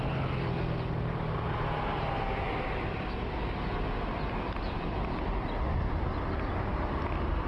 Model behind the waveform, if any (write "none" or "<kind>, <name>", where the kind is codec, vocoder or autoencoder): none